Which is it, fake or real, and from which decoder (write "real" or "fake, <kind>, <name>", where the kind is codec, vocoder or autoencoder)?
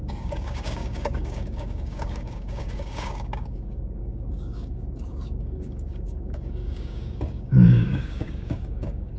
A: fake, codec, DAC